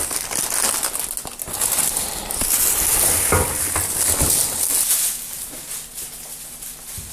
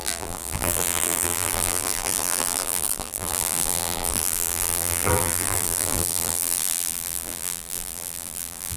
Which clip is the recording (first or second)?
first